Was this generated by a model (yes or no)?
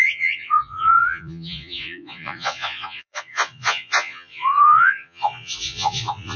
yes